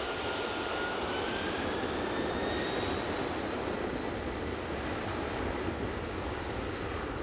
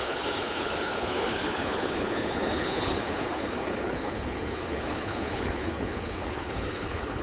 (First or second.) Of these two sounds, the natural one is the first